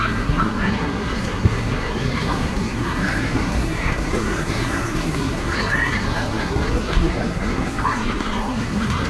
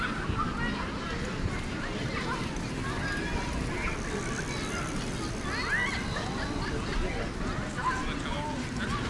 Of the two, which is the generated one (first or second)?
first